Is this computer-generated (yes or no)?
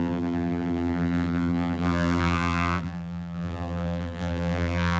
yes